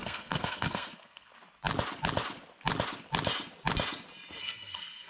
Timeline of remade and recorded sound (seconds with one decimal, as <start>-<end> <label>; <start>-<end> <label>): 0.0-1.3 remade; 1.3-4.4 recorded; 4.4-5.1 remade